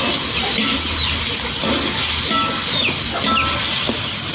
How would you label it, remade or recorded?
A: recorded